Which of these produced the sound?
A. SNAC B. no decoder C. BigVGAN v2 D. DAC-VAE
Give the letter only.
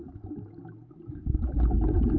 B